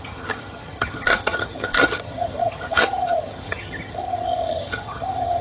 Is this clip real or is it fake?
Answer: fake